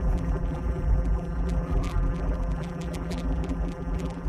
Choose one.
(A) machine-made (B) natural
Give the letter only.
A